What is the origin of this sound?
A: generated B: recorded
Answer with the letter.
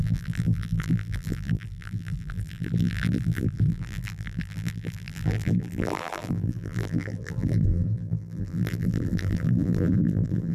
A